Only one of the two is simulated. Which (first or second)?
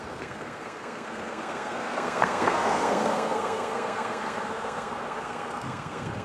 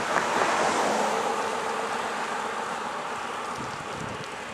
first